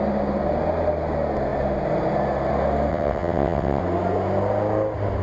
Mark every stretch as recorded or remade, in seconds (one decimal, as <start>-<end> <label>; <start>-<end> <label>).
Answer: 0.0-2.9 recorded; 2.9-3.8 remade; 3.8-5.2 recorded